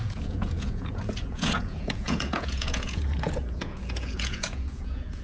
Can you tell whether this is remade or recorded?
remade